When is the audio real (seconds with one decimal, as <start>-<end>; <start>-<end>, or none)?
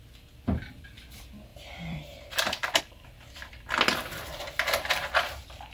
0.0-1.5; 2.8-5.7